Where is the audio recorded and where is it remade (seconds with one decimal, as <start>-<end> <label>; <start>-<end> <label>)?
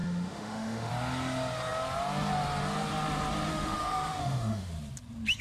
0.0-0.9 remade; 0.9-3.5 recorded; 3.5-4.7 remade; 4.7-5.4 recorded